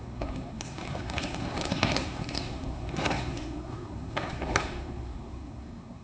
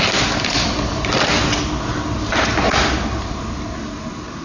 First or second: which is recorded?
second